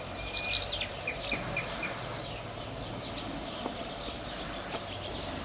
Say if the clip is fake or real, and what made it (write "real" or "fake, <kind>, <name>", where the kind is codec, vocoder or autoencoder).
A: real